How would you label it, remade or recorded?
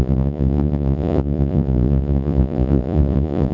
remade